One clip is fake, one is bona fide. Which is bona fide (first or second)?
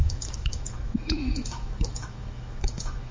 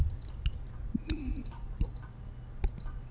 second